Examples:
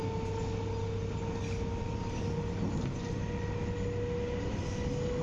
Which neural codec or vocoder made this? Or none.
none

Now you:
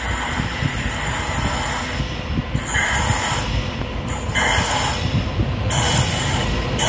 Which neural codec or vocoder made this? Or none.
none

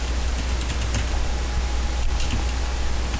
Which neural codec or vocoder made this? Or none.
none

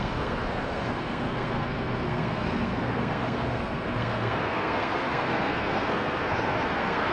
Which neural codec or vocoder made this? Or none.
codec, SNAC